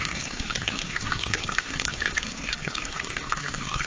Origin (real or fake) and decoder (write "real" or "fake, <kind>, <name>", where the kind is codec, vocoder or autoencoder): fake, codec, SNAC